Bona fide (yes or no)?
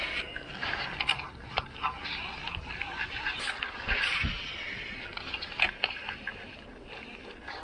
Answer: yes